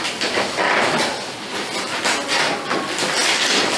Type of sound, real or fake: real